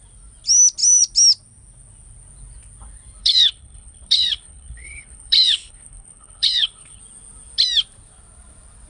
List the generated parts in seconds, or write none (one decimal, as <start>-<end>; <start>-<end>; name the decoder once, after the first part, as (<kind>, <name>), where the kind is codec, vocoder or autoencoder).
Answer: 3.2-7.0 (codec, HILCodec)